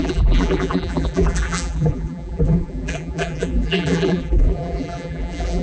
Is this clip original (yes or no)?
no